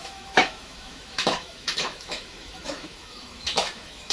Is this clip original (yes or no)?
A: no